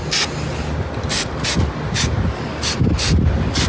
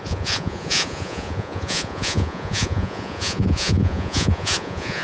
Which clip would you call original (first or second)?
first